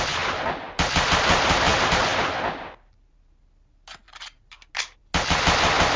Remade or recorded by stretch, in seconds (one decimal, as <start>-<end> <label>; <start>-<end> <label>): 0.0-6.0 recorded